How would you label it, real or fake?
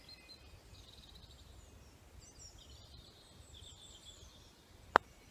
real